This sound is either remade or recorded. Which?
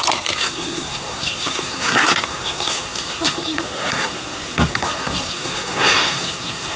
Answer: remade